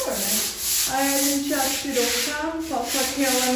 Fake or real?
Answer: real